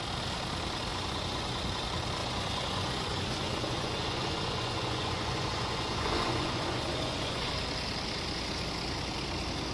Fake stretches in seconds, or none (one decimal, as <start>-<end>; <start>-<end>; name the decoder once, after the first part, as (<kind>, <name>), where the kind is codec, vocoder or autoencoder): 0.9-1.8 (vocoder, Vocos); 2.2-7.5